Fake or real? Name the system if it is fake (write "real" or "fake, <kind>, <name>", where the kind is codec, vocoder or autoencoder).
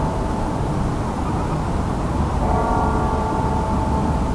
real